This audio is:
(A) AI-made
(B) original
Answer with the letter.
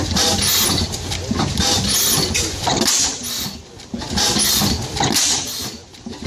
B